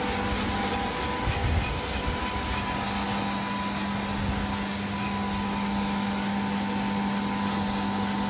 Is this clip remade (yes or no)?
no